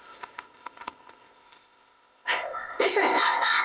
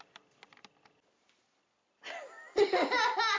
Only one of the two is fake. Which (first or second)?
first